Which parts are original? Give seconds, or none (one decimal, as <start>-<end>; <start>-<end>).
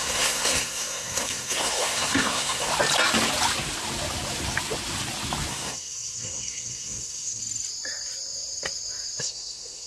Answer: 2.7-5.5; 7.4-9.2